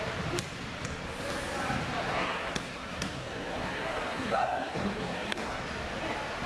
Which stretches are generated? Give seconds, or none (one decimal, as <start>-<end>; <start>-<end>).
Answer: 2.0-5.6